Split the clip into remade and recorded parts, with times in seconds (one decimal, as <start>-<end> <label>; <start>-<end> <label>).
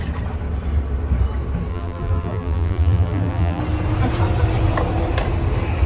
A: 0.0-1.7 recorded; 1.7-3.6 remade; 3.6-5.9 recorded